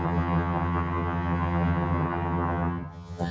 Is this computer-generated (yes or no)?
yes